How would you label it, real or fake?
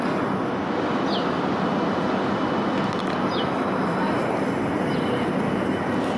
real